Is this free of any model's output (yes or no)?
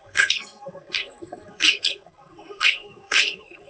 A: no